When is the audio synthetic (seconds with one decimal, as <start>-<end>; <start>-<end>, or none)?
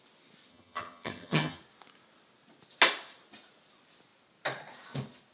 0.5-1.6